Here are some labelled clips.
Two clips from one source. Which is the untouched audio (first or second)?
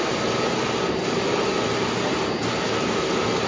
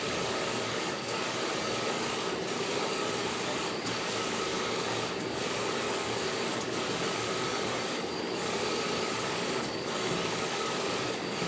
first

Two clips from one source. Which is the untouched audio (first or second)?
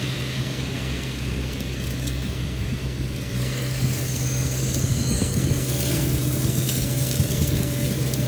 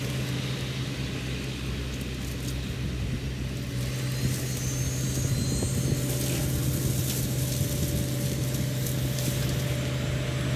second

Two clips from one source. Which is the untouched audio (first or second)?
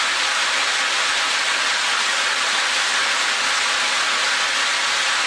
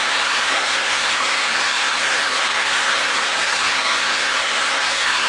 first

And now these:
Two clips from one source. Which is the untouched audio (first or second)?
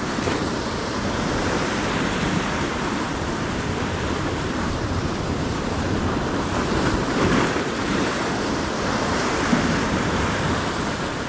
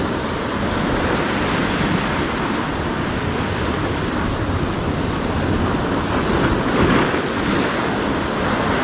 second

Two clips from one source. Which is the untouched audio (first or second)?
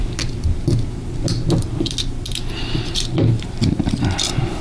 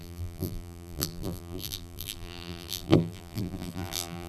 first